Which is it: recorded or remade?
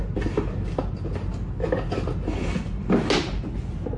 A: recorded